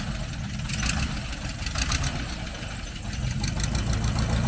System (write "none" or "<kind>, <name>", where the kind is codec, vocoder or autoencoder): none